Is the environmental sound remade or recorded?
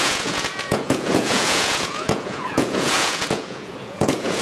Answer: remade